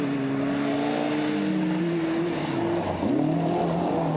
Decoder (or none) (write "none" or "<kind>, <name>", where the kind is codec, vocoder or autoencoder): none